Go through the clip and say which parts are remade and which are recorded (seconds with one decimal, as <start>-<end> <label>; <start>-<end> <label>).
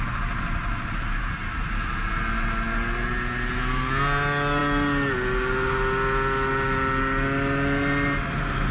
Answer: 0.0-8.7 recorded